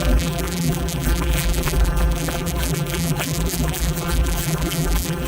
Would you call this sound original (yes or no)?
no